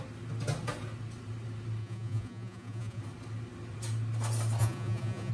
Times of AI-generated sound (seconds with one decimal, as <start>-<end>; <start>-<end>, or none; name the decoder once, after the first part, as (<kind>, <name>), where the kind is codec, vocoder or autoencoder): 1.8-3.0 (vocoder, Vocos); 4.6-5.3